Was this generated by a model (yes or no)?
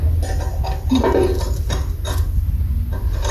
no